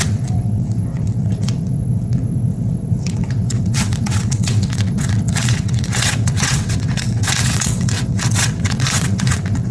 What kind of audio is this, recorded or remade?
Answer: remade